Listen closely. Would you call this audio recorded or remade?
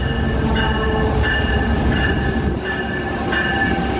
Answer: recorded